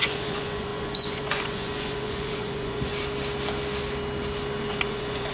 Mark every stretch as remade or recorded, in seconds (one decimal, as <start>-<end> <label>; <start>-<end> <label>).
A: 0.0-2.9 remade; 2.9-4.7 recorded; 4.7-5.3 remade